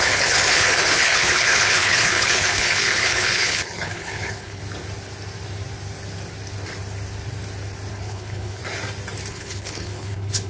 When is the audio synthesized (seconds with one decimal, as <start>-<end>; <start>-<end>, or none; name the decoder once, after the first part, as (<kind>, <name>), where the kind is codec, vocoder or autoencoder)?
0.0-4.6 (codec, HILCodec); 7.9-8.6; 9.3-10.5